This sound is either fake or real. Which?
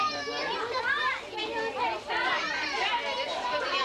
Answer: real